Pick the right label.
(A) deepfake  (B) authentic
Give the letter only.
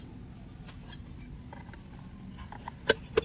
B